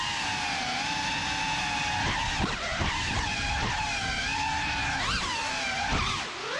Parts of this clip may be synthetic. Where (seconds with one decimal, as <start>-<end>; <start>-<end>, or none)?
2.7-3.6